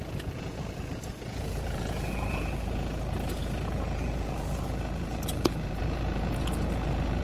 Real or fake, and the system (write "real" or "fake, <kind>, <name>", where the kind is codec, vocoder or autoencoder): fake, vocoder, Vocos